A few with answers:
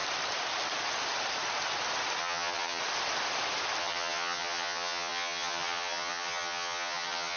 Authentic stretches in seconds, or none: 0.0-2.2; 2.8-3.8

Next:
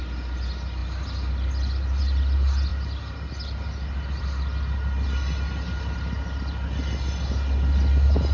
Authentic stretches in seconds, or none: 0.0-8.3

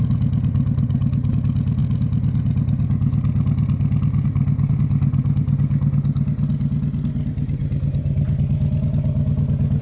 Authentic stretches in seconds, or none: 0.0-9.8

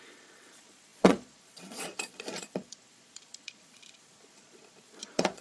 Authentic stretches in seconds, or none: none

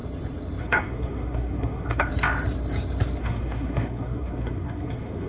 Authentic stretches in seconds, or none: 0.0-0.6; 2.1-3.2